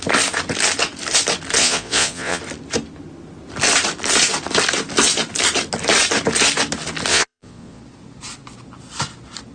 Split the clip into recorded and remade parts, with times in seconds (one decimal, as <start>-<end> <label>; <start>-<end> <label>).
0.0-1.6 recorded; 1.6-2.4 remade; 2.4-7.1 recorded; 7.1-7.8 remade; 7.8-9.5 recorded